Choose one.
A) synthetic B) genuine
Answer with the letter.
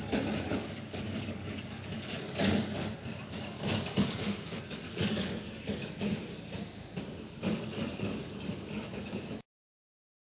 A